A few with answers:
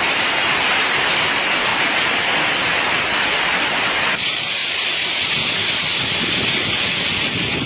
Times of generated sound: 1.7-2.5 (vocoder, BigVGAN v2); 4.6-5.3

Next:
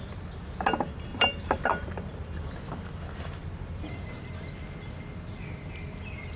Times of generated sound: 1.1-2.4 (vocoder, BigVGAN v2); 3.4-4.2

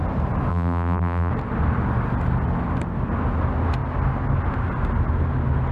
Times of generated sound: 0.5-1.3 (vocoder, BigVGAN v2)

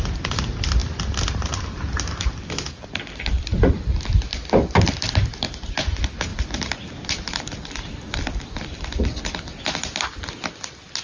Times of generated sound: 0.8-5.6 (vocoder, BigVGAN v2); 6.3-9.2

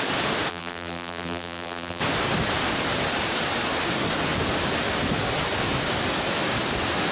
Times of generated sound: 0.5-2.0 (vocoder, BigVGAN v2)

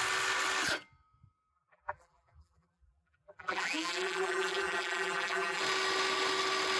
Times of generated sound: 1.5-5.6 (vocoder, BigVGAN v2)